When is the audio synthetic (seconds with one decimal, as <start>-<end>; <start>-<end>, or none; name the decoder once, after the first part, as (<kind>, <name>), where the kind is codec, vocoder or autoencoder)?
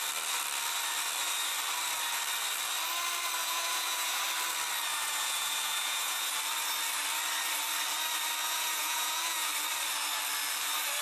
3.4-4.2 (vocoder, Vocos); 4.9-6.3; 8.4-9.5